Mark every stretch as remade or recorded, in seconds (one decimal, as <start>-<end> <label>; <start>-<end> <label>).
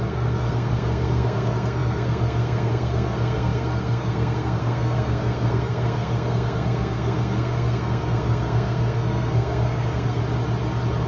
0.0-10.2 remade; 10.2-11.1 recorded